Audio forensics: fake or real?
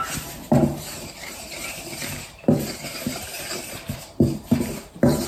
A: fake